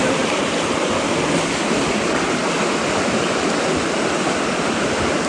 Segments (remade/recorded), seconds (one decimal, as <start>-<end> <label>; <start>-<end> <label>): 0.0-5.3 recorded

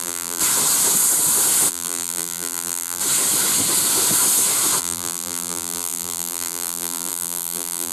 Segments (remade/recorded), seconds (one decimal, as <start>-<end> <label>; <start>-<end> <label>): 0.0-0.4 remade; 0.4-1.7 recorded; 1.7-3.0 remade; 3.0-4.8 recorded; 4.8-7.9 remade

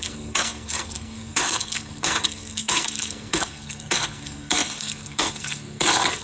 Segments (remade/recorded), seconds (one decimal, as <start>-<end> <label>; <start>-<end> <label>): 0.0-6.2 remade

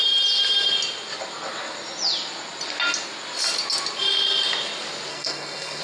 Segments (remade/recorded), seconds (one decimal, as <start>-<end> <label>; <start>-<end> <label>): 0.0-5.1 recorded; 5.1-5.8 remade

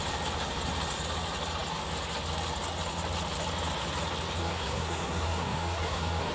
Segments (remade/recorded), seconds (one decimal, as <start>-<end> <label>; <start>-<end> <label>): 0.0-4.4 recorded; 4.4-6.3 remade

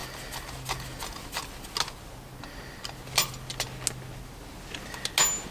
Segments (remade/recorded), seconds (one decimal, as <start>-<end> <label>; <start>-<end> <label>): 0.0-5.5 recorded

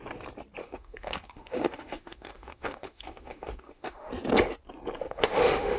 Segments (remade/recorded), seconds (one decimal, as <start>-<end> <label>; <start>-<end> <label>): 0.0-0.6 recorded; 0.6-4.1 remade; 4.1-5.0 recorded; 5.0-5.8 remade

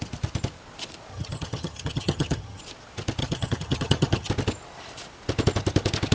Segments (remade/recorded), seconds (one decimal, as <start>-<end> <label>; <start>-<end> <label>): 0.0-1.1 recorded; 1.1-2.6 remade; 2.6-3.2 recorded; 3.2-4.3 remade; 4.3-6.1 recorded